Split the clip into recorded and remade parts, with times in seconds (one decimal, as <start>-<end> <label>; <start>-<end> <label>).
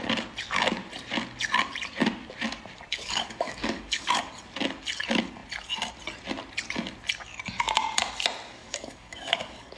0.0-2.9 recorded; 2.9-4.3 remade; 4.3-8.6 recorded; 8.6-9.8 remade